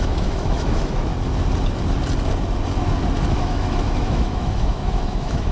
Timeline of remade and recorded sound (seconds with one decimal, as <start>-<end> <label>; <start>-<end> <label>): 0.0-1.1 remade; 1.1-3.3 recorded; 3.3-5.5 remade